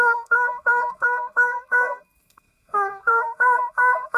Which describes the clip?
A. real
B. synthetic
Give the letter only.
B